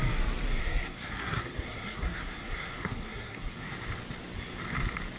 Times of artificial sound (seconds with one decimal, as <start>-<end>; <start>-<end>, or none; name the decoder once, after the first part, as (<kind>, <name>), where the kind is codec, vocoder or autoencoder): 0.6-3.7 (codec, SNAC)